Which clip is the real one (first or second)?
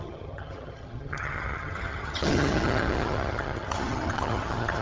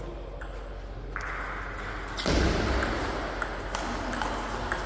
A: second